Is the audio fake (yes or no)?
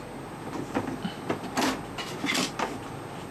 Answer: no